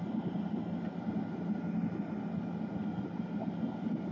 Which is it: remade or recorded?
recorded